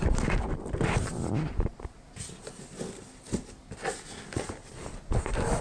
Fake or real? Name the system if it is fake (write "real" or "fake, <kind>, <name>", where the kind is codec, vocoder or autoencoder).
real